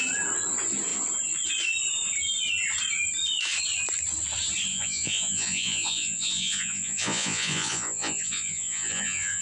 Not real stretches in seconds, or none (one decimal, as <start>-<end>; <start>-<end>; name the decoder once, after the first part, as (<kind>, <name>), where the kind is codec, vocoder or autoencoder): 4.7-9.4 (vocoder, Vocos)